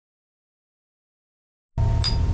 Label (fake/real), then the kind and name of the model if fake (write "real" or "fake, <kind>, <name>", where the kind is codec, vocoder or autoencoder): real